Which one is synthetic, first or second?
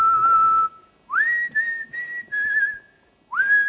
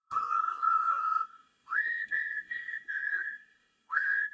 second